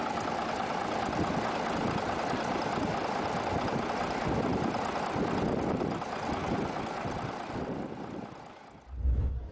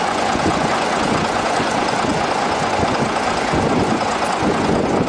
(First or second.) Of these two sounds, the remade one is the second